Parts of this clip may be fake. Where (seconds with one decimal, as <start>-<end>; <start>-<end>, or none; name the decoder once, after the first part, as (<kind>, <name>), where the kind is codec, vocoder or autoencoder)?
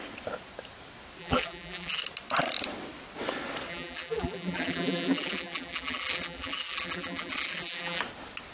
1.2-2.0 (vocoder, BigVGAN v2); 3.7-8.0